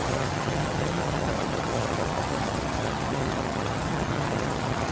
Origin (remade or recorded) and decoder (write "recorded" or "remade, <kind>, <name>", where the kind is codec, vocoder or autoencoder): remade, vocoder, HiFi-GAN